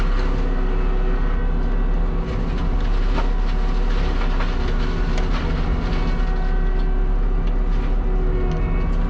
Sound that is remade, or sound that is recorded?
recorded